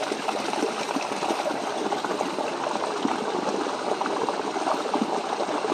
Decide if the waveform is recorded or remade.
recorded